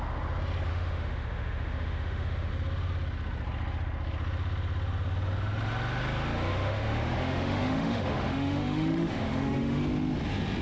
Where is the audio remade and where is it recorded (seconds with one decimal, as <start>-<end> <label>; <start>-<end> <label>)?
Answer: 0.0-0.7 recorded; 0.7-2.5 remade; 2.5-6.5 recorded; 6.5-9.8 remade; 9.8-10.6 recorded